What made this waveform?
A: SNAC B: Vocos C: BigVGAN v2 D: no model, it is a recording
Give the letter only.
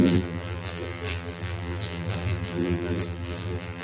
C